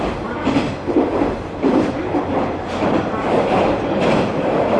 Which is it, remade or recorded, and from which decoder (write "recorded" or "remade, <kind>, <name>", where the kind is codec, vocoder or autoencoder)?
remade, vocoder, BigVGAN v2